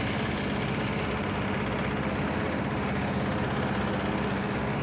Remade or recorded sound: recorded